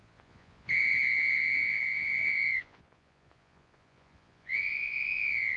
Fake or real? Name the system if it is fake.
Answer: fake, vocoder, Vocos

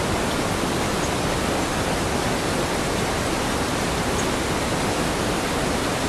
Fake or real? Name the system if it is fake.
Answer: real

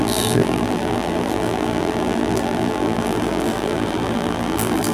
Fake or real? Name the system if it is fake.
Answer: fake, vocoder, BigVGAN v2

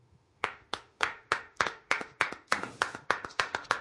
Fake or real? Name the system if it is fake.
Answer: fake, autoencoder, DAC-VAE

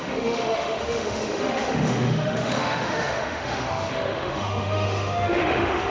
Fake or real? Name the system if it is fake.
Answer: fake, autoencoder, DAC-VAE